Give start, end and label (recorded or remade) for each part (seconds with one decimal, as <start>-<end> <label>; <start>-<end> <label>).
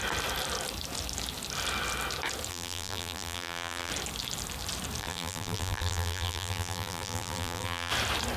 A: 0.0-2.5 recorded; 2.5-3.9 remade; 3.9-5.0 recorded; 5.0-7.9 remade; 7.9-8.4 recorded